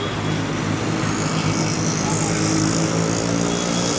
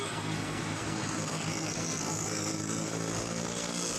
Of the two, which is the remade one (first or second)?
second